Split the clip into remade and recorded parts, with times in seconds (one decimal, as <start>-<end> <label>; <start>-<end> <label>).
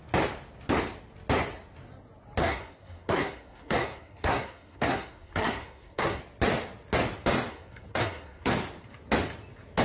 0.0-2.4 recorded; 2.4-6.2 remade; 6.2-7.5 recorded; 7.5-8.5 remade; 8.5-9.8 recorded